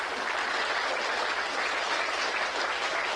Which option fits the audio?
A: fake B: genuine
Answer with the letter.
B